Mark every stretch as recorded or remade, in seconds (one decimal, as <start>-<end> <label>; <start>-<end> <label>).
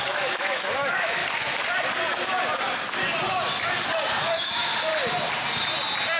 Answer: 0.0-1.2 remade; 1.2-4.2 recorded; 4.2-4.9 remade; 4.9-6.2 recorded